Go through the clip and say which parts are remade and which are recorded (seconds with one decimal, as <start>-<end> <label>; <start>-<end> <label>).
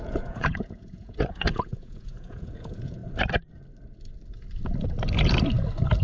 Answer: 0.0-3.0 remade; 3.0-6.0 recorded